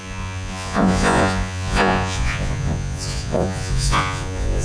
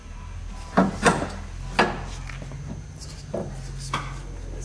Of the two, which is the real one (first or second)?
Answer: second